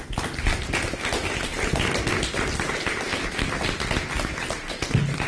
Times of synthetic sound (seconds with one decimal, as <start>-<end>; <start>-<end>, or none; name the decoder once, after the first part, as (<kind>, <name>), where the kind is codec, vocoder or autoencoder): none